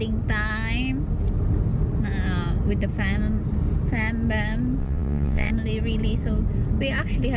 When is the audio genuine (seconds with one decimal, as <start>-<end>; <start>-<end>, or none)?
0.0-4.8; 5.5-7.4

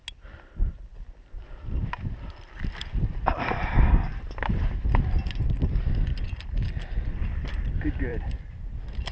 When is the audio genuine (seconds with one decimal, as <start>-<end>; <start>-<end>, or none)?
0.0-4.1; 4.7-8.1

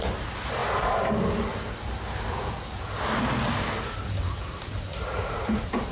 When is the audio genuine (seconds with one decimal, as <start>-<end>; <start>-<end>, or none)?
0.0-0.6; 1.1-4.9